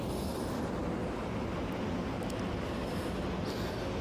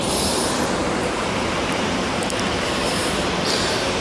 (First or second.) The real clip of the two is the first